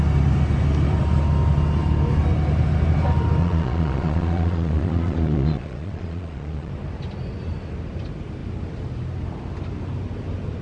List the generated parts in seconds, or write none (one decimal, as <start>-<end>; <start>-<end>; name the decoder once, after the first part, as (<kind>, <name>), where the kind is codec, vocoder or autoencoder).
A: 3.4-6.7 (vocoder, Vocos)